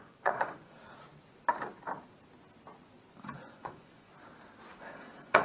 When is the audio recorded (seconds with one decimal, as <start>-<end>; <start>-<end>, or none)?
0.8-3.2; 4.1-4.7